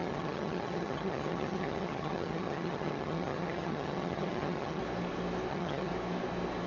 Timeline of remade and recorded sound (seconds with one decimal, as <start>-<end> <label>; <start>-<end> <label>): 0.0-4.8 remade; 4.8-5.5 recorded; 5.5-5.9 remade; 5.9-6.7 recorded

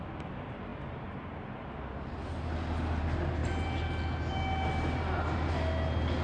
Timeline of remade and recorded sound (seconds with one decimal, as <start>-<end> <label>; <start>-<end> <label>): 0.0-6.2 recorded

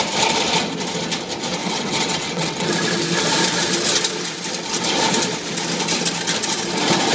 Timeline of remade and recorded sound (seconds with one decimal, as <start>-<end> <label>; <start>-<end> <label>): 0.0-1.6 recorded; 1.6-2.7 remade; 2.7-7.1 recorded

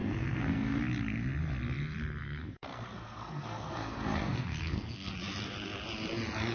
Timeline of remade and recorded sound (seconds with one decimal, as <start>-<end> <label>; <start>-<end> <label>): 0.0-0.8 remade; 0.8-2.2 recorded; 2.2-5.1 remade; 5.1-6.5 recorded

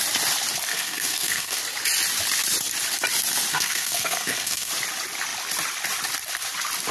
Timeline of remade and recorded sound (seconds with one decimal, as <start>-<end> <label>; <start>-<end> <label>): 0.0-0.7 recorded; 0.7-1.6 remade; 1.6-3.5 recorded; 3.5-4.7 remade; 4.7-6.9 recorded

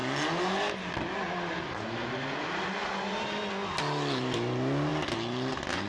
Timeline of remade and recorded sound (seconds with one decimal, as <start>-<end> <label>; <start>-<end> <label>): 0.0-5.9 recorded

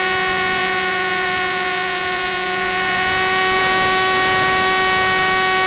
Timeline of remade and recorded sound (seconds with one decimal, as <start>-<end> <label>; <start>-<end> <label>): 0.0-5.7 remade